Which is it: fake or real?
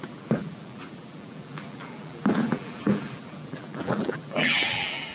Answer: fake